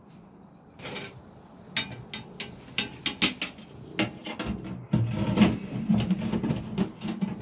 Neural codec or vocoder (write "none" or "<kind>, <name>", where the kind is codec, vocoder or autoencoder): none